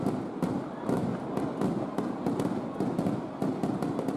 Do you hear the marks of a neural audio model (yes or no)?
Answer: no